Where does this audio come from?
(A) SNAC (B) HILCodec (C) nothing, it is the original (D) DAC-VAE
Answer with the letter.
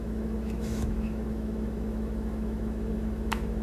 D